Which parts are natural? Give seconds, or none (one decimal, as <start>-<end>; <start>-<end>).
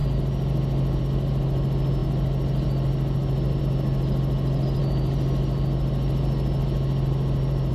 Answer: 0.0-7.7